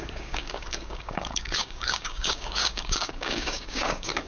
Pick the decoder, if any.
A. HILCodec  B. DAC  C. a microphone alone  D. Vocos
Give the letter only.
B